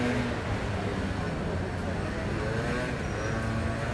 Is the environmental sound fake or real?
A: real